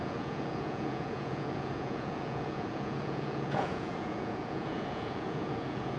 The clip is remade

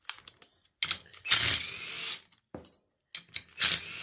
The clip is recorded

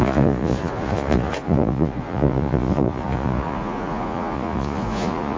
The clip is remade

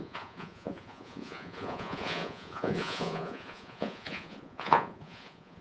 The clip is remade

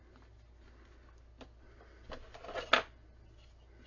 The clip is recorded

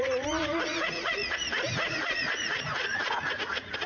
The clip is remade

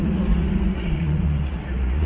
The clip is remade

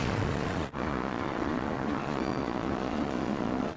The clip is remade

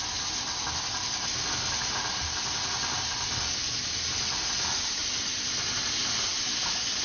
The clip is recorded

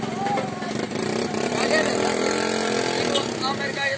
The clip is recorded